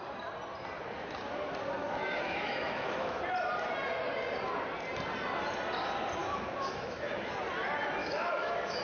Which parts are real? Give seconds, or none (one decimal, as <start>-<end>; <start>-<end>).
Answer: 0.0-1.8; 3.2-6.2; 7.3-8.0